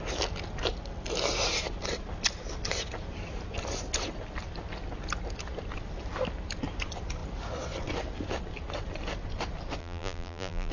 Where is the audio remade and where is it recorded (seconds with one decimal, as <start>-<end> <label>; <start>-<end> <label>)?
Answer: 0.0-9.8 recorded; 9.8-10.7 remade